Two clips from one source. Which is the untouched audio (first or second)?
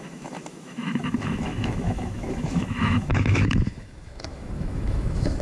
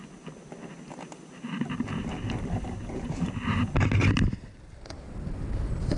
second